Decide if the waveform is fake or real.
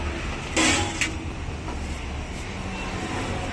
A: real